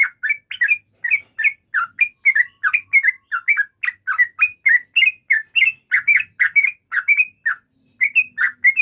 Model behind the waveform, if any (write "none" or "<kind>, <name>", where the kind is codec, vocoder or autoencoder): none